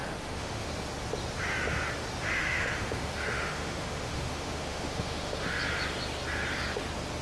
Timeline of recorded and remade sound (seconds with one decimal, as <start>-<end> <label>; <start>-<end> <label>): 0.0-0.7 remade; 0.7-2.2 recorded; 2.2-5.6 remade; 5.6-7.2 recorded

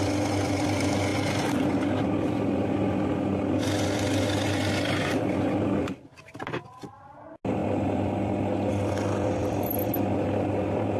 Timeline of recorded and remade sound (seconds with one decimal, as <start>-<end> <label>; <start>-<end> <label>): 0.0-11.0 recorded

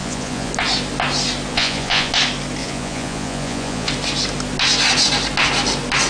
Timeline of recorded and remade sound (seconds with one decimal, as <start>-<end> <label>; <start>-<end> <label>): 0.0-0.5 remade; 0.5-1.5 recorded; 1.5-2.1 remade; 2.1-2.6 recorded; 2.6-3.9 remade; 3.9-6.1 recorded

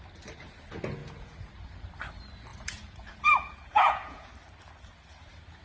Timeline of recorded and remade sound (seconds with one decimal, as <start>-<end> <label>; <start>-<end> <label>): 0.0-1.0 recorded; 1.0-1.5 remade; 1.5-2.5 recorded; 2.5-4.3 remade; 4.3-5.6 recorded

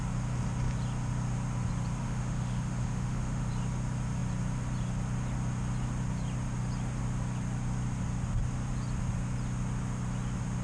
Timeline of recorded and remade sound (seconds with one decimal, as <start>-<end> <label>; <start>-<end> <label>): 0.0-2.0 recorded; 2.0-3.5 remade; 3.5-10.6 recorded

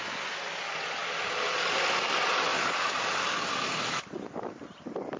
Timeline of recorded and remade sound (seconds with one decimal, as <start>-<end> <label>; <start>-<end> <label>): 0.0-5.2 remade

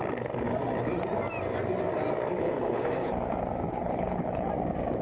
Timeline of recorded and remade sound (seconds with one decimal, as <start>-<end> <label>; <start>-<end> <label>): 0.0-2.4 recorded; 2.4-3.1 remade; 3.1-3.7 recorded; 3.7-4.5 remade; 4.5-5.0 recorded